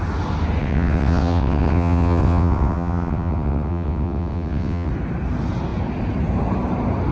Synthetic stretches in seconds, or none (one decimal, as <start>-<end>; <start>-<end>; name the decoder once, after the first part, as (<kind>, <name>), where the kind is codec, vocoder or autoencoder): 0.6-4.9 (vocoder, WaveNeXt)